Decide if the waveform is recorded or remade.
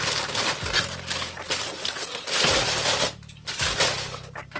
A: recorded